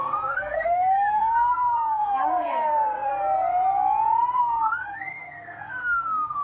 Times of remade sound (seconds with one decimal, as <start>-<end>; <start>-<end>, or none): 0.0-3.1; 4.4-6.4